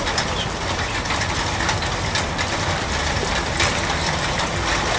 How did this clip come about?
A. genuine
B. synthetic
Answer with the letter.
A